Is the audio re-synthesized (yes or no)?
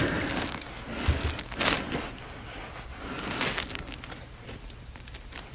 no